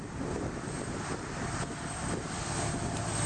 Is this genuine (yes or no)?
yes